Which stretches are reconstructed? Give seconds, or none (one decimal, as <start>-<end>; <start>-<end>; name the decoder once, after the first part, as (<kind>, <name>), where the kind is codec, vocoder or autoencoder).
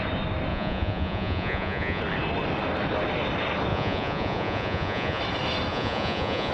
0.5-2.0 (vocoder, Vocos); 3.7-5.2; 5.7-6.5